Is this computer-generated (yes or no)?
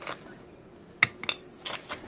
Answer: no